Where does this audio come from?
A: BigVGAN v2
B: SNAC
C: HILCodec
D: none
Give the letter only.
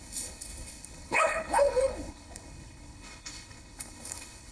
C